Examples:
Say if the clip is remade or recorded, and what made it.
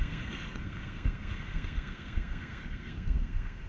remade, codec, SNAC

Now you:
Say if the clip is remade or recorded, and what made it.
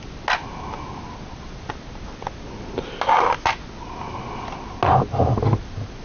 recorded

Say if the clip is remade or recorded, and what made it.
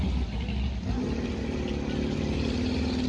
recorded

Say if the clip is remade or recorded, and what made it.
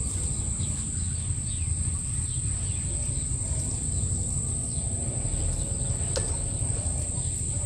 recorded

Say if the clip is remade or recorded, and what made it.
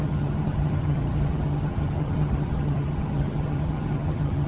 remade, vocoder, HiFi-GAN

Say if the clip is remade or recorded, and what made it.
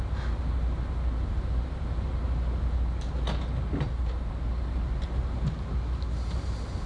recorded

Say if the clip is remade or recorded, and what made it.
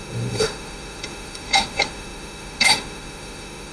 remade, autoencoder, DAC-VAE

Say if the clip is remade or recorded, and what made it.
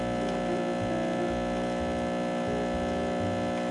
recorded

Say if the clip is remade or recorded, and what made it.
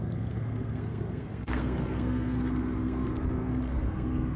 remade, codec, SNAC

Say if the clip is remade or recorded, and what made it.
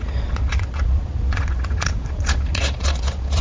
remade, vocoder, Vocos